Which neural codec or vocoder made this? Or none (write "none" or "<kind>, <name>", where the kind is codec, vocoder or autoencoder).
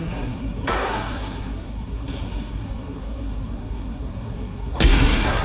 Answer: codec, SNAC